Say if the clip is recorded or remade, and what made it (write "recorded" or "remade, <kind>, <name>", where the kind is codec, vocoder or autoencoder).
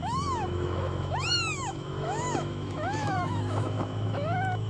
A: remade, autoencoder, DAC-VAE